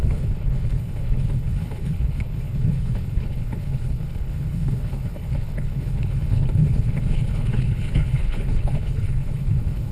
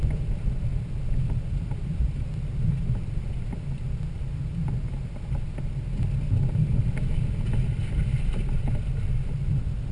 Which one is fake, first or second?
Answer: first